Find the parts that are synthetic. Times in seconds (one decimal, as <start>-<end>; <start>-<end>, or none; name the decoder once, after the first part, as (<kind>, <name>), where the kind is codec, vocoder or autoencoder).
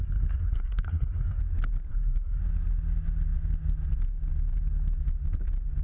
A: 0.0-1.4 (codec, SNAC); 1.9-2.4